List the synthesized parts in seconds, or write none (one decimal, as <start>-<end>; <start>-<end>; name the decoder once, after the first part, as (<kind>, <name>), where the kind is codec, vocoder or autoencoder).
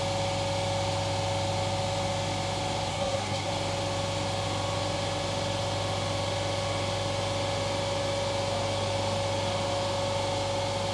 2.9-3.5 (codec, SNAC)